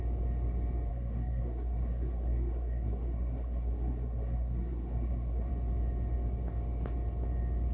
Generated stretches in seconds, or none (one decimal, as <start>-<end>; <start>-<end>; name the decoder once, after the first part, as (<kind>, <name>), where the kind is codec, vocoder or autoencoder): 0.9-5.5 (codec, SNAC)